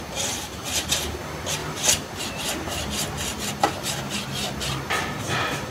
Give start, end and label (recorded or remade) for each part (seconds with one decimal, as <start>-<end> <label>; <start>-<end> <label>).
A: 0.0-1.6 recorded; 1.6-3.5 remade; 3.5-5.7 recorded